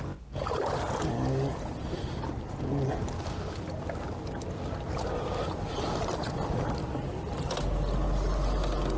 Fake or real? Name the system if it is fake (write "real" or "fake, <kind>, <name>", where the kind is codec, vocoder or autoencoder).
real